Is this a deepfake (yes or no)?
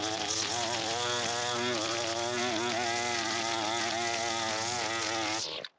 no